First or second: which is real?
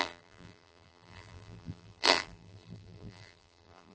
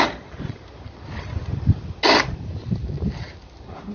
second